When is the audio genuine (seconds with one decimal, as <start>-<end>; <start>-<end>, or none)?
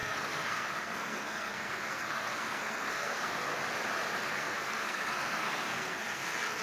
3.5-4.2